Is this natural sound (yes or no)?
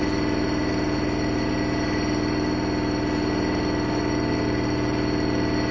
yes